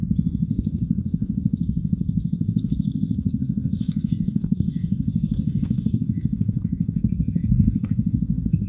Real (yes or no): no